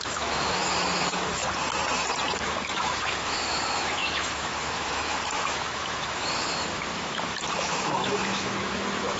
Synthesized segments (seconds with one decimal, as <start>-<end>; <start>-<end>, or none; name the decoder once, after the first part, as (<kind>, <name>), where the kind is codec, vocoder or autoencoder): 0.0-1.4 (autoencoder, DAC-VAE); 2.3-9.2